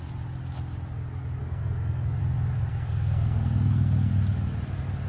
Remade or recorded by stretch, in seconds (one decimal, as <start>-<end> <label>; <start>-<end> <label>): 0.0-1.4 recorded; 1.4-2.2 remade; 2.2-2.7 recorded; 2.7-4.1 remade; 4.1-5.1 recorded